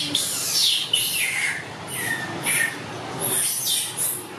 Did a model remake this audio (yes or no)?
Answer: no